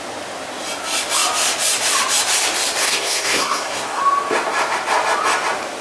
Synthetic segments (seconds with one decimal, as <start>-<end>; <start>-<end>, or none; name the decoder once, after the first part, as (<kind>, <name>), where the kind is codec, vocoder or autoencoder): 2.8-4.0 (codec, SNAC)